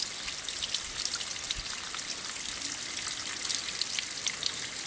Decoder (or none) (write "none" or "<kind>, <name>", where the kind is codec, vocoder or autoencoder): none